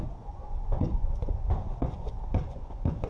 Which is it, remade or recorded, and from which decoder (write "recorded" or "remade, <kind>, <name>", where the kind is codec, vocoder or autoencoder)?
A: remade, vocoder, Vocos